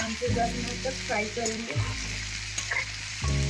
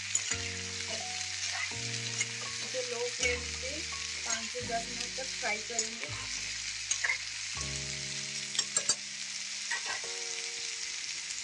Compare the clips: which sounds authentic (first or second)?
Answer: second